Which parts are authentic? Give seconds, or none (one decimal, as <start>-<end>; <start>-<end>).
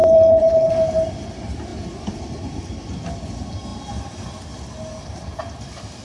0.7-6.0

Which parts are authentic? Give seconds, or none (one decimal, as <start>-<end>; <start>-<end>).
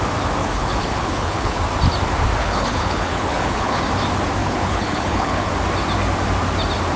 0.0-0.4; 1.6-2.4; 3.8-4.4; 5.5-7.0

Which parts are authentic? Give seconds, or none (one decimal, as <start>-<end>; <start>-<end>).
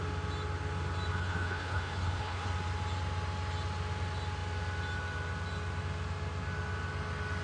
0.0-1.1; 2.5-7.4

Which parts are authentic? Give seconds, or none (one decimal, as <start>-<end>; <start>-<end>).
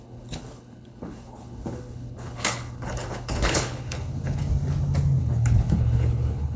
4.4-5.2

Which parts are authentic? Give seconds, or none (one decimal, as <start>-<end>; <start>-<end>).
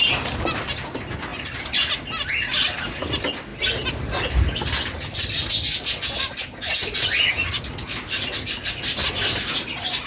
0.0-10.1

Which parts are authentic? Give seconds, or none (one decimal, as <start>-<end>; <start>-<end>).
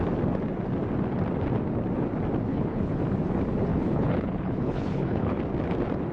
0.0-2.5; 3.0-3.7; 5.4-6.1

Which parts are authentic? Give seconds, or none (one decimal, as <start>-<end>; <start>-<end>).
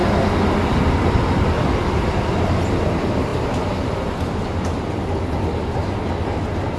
0.0-6.8